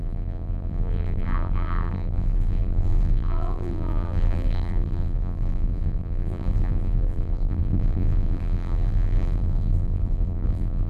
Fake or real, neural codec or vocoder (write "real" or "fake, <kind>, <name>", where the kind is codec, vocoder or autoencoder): fake, vocoder, BigVGAN v2